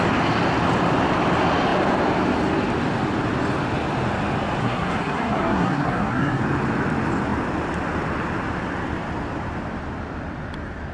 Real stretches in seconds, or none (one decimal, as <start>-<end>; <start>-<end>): 0.0-4.6; 6.4-10.9